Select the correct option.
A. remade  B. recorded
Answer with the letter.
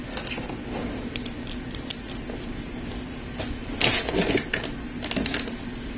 B